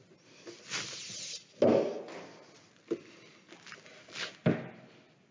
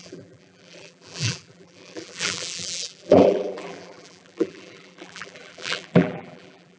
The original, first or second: first